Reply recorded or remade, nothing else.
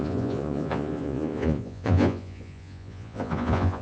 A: remade